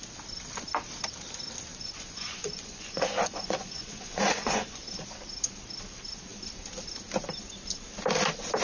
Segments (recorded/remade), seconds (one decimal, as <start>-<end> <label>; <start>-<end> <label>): 0.0-1.7 recorded; 1.7-4.8 remade; 4.8-8.6 recorded